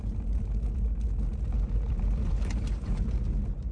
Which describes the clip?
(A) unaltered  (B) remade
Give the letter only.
A